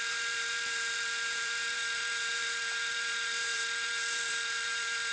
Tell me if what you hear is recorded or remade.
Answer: remade